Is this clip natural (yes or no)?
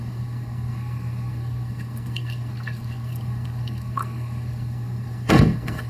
no